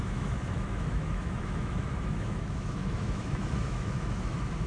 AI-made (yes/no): yes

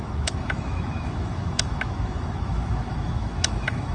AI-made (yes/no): yes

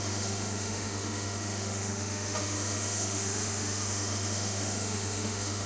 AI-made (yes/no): yes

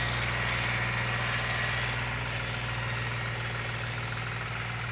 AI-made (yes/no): no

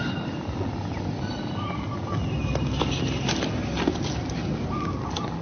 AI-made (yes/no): no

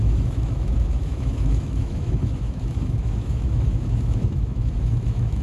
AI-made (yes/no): yes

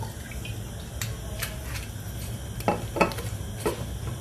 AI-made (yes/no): no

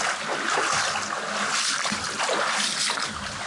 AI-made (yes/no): no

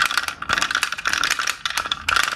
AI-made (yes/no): no